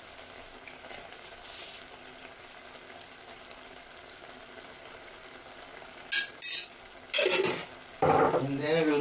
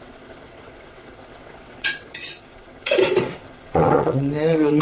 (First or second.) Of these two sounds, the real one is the first